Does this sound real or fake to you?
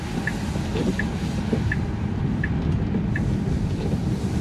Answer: real